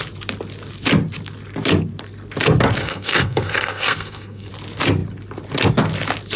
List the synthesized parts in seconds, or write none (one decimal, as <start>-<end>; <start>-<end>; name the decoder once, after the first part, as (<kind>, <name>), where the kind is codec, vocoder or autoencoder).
2.8-4.5 (codec, SNAC)